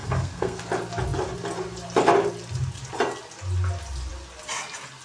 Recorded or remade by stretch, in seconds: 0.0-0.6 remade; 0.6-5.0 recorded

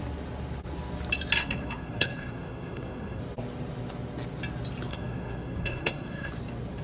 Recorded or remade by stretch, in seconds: 0.0-1.4 recorded; 1.4-3.2 remade; 3.2-4.9 recorded; 4.9-6.3 remade; 6.3-6.8 recorded

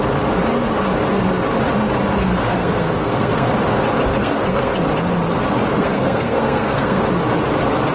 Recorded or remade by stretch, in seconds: 0.0-2.3 recorded; 2.3-3.5 remade; 3.5-4.2 recorded; 4.2-4.7 remade; 4.7-5.7 recorded; 5.7-7.0 remade; 7.0-7.9 recorded

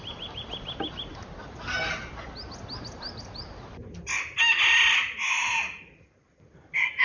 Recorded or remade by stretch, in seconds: 0.0-7.0 recorded

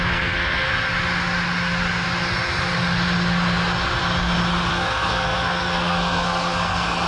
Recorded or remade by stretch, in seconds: 0.0-0.7 remade; 0.7-4.7 recorded; 4.7-7.1 remade

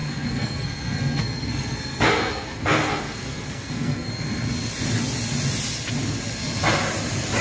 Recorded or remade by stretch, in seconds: 0.0-4.1 remade; 4.1-7.4 recorded

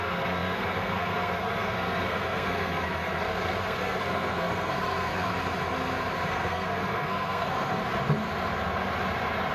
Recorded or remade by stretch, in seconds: 0.0-5.3 remade; 5.3-6.3 recorded; 6.3-7.8 remade; 7.8-9.5 recorded

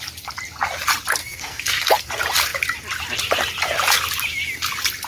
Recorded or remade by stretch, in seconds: 0.0-1.2 recorded; 1.2-2.1 remade; 2.1-5.1 recorded